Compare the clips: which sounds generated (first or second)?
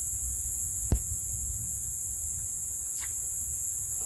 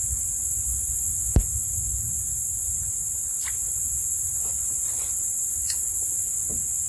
first